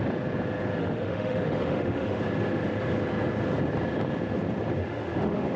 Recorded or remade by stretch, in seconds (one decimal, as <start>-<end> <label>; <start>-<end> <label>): 0.0-0.8 recorded; 0.8-2.2 remade; 2.2-4.8 recorded; 4.8-5.6 remade